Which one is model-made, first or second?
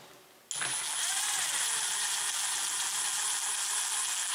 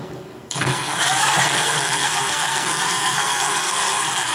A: second